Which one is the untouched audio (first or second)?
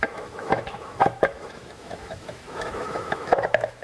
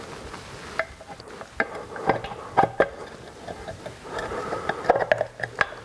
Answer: second